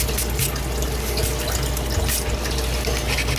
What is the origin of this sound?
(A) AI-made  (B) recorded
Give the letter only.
B